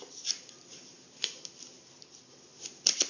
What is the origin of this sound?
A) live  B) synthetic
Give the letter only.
A